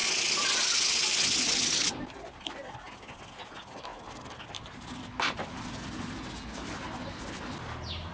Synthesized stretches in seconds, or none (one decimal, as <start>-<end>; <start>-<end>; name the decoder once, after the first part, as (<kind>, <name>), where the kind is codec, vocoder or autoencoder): none